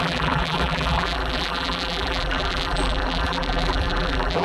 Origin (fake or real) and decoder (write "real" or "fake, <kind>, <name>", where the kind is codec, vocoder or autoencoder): fake, vocoder, BigVGAN v2